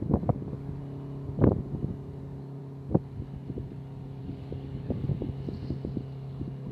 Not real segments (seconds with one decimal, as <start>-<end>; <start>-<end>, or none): 0.0-0.8; 2.2-2.6; 4.2-5.1